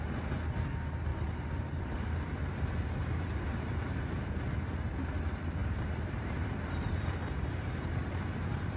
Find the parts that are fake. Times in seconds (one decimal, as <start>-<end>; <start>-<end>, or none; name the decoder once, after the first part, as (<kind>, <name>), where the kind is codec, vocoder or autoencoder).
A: 1.1-4.4 (vocoder, BigVGAN v2); 5.6-8.1